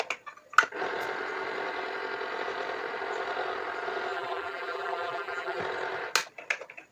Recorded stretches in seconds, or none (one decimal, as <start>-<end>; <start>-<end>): 0.0-4.1; 5.6-6.9